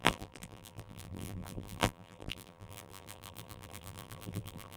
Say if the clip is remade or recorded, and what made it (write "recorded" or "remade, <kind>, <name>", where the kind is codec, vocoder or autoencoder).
remade, vocoder, BigVGAN v2